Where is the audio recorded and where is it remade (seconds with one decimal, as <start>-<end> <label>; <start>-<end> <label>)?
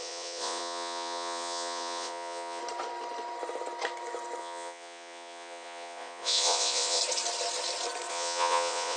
0.0-2.6 remade; 2.6-4.4 recorded; 4.4-7.0 remade; 7.0-8.1 recorded; 8.1-9.0 remade